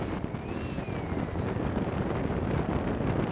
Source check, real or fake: real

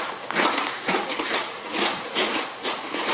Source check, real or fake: fake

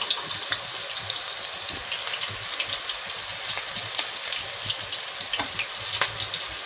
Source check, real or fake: real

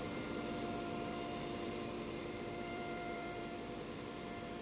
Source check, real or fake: fake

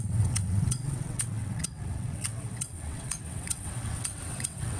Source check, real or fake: fake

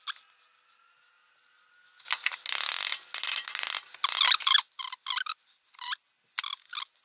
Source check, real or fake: real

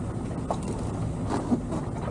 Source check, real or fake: real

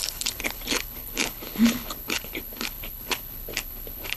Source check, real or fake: fake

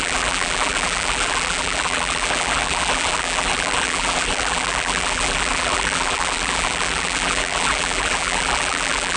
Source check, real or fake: fake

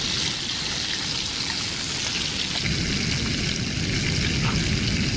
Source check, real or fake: real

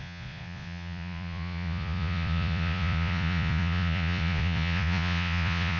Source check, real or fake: fake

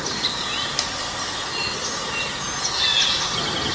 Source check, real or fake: real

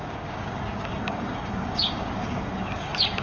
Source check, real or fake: fake